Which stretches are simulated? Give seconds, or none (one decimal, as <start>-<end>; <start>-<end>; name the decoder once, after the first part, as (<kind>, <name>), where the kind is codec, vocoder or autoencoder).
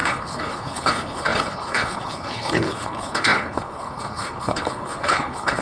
0.0-5.6 (codec, HILCodec)